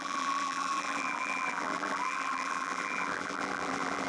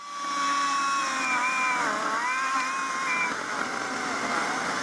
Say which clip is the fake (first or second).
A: first